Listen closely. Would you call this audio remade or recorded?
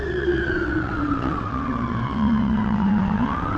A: remade